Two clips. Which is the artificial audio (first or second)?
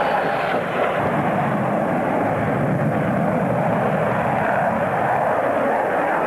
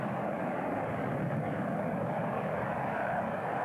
second